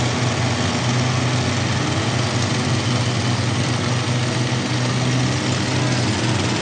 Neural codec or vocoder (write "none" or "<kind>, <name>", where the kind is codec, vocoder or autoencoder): none